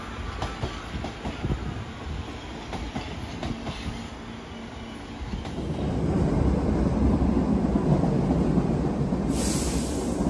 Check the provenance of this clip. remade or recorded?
recorded